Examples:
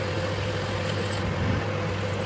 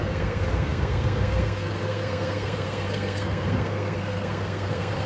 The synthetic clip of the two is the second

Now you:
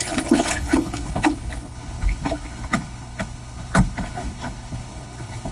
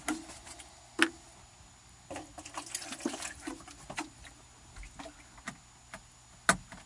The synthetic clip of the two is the first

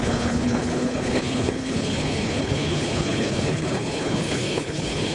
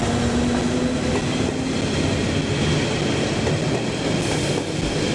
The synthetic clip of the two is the first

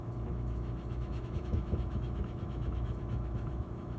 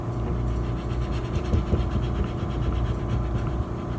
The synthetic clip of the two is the first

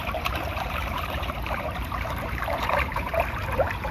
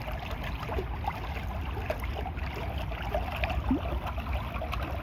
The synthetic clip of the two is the first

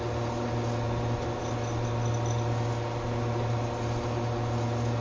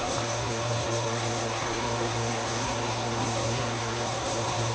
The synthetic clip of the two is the second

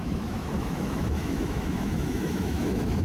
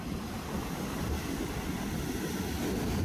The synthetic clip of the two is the first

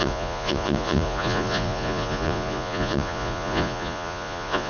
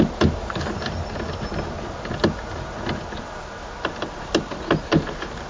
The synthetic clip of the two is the first